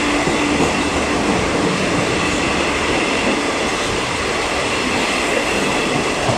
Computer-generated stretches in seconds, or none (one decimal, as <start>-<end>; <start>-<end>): none